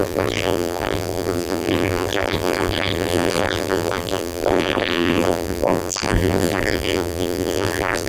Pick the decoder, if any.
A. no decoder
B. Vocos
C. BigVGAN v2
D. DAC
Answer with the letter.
C